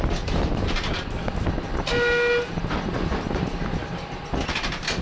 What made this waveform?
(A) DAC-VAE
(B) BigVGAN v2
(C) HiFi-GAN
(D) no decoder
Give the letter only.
D